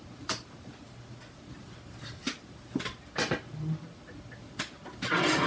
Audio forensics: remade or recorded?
recorded